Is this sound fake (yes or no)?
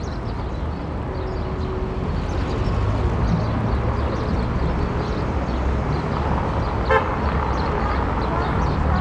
no